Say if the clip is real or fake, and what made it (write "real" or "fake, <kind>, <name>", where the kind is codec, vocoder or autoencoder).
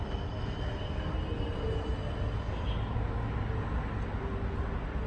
real